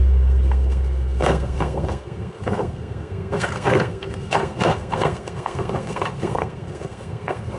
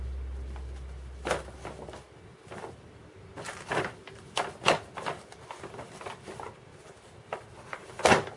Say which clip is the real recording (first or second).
second